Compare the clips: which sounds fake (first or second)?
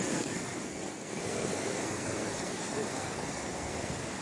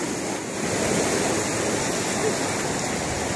first